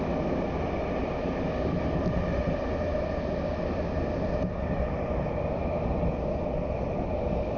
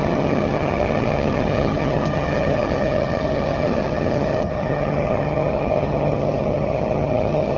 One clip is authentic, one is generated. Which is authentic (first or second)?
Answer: first